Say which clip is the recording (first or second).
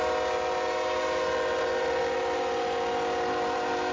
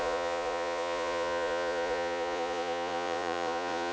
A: first